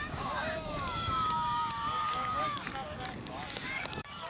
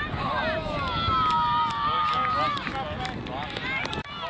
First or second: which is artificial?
first